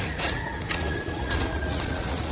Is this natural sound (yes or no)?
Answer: no